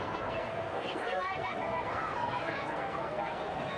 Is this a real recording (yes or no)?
no